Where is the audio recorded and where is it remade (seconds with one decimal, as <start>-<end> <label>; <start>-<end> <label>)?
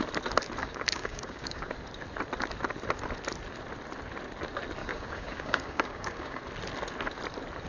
0.0-0.6 recorded; 0.6-1.7 remade; 1.7-4.8 recorded; 4.8-6.4 remade; 6.4-7.7 recorded